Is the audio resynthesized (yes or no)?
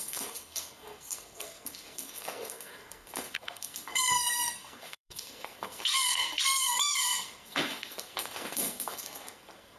yes